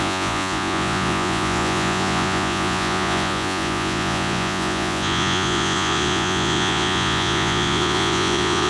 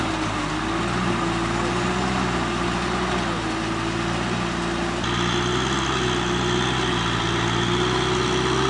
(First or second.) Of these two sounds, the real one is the second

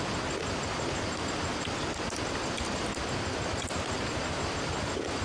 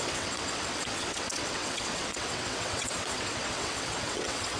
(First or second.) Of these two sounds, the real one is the first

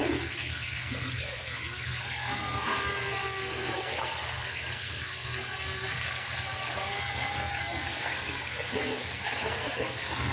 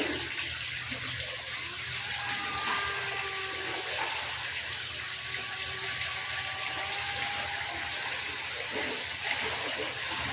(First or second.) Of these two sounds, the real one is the second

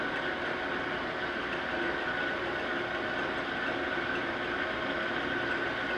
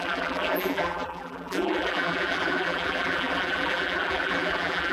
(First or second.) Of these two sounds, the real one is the first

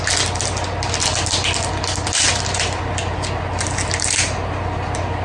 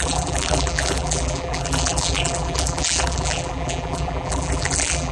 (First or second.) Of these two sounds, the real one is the first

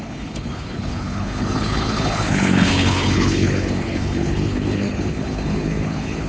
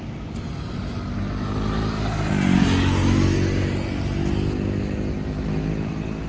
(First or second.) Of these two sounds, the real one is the second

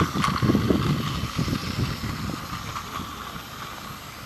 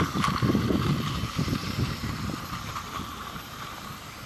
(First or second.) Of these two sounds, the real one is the first